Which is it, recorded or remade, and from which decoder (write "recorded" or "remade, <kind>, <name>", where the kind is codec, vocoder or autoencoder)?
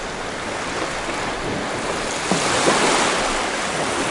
recorded